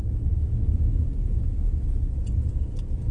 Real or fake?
real